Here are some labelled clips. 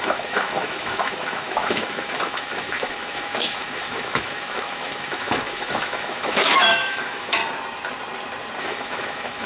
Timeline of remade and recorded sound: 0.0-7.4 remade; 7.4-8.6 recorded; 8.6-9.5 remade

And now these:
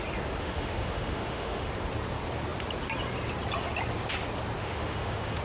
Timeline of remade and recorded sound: 0.0-0.4 recorded; 0.4-1.7 remade; 1.7-4.6 recorded; 4.6-5.4 remade

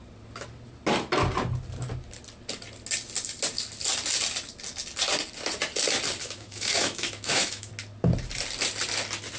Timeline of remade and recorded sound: 0.0-6.2 recorded; 6.2-7.7 remade; 7.7-9.4 recorded

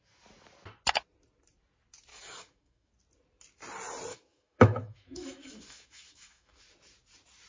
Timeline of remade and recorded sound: 0.0-2.1 recorded; 2.1-2.9 remade; 2.9-4.1 recorded; 4.1-6.6 remade; 6.6-7.5 recorded

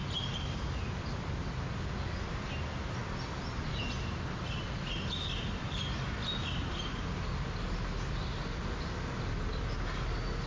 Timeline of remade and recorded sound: 0.0-10.5 recorded